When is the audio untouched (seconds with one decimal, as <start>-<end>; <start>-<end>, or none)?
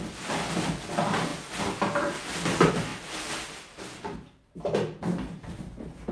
0.0-6.1